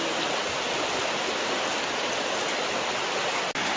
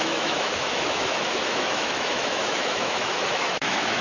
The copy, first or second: second